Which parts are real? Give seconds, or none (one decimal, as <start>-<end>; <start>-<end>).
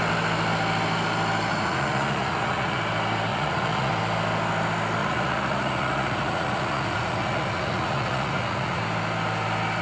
0.0-1.5; 2.8-3.3; 3.9-5.0; 8.8-9.8